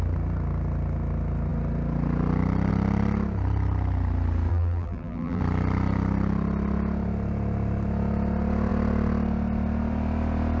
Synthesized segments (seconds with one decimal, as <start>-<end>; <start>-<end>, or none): 4.5-5.4